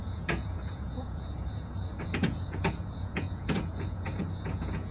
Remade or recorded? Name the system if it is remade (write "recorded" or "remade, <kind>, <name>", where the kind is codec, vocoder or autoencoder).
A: remade, vocoder, Vocos